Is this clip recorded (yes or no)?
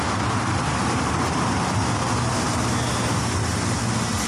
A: yes